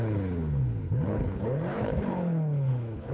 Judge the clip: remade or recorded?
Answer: remade